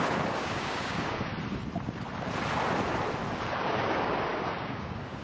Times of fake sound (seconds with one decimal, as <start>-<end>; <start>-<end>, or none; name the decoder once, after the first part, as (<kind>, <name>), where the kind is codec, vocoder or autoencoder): 0.0-1.3 (codec, DAC); 3.5-5.2